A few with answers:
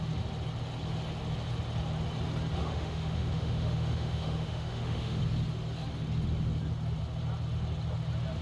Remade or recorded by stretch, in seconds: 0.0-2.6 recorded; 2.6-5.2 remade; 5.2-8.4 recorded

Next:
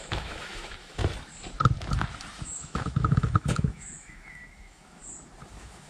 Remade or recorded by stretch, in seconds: 0.0-1.0 remade; 1.0-2.4 recorded; 2.4-5.0 remade; 5.0-5.5 recorded; 5.5-5.9 remade

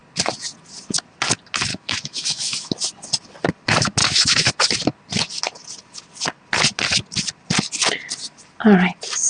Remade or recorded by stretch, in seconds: 0.0-1.7 recorded; 1.7-2.7 remade; 2.7-4.0 recorded; 4.0-4.5 remade; 4.5-9.3 recorded

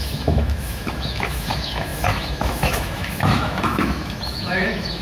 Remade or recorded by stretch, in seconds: 0.0-5.0 remade

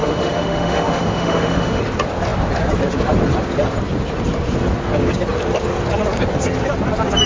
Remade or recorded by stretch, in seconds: 0.0-1.8 remade; 1.8-7.3 recorded